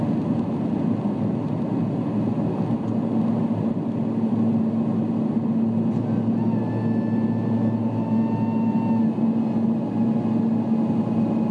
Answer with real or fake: real